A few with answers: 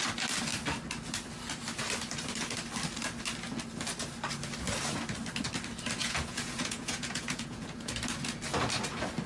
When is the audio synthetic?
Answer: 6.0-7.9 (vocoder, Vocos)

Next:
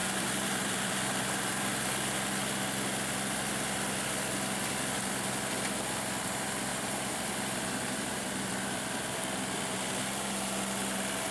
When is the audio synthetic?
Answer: 0.0-1.7 (vocoder, BigVGAN v2); 6.7-9.2

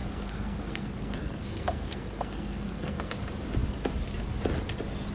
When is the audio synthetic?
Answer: 0.0-3.1 (codec, SNAC)

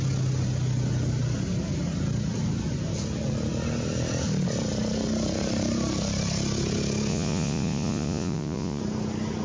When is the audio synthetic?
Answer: 7.1-8.8 (vocoder, Vocos)

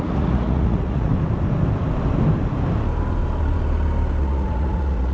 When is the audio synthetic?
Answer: 0.0-1.1 (vocoder, Vocos); 4.2-5.1